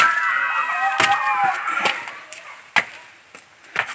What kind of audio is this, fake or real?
real